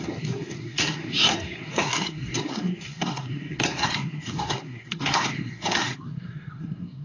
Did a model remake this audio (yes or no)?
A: yes